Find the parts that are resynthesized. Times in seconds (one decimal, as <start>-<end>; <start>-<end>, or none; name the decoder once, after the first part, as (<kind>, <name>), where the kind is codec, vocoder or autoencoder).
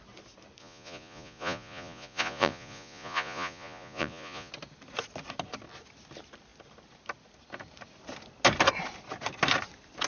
0.6-4.5 (vocoder, Vocos)